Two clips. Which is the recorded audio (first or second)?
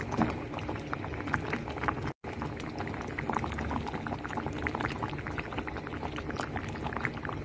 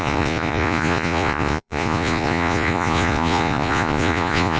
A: first